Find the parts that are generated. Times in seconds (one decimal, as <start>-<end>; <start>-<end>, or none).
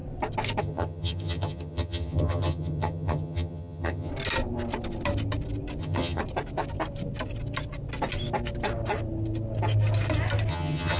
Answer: 0.6-4.1; 5.8-6.2; 10.5-11.0